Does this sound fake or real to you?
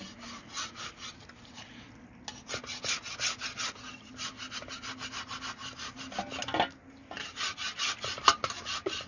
real